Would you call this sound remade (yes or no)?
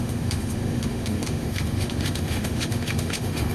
yes